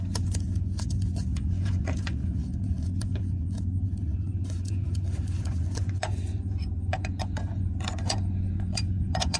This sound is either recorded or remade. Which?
remade